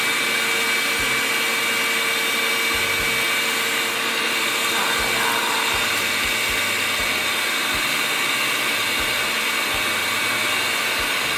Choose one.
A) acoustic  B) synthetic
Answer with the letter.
A